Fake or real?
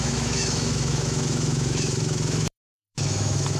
fake